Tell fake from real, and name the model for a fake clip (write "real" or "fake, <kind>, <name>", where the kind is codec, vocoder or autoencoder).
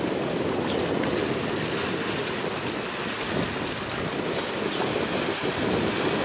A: real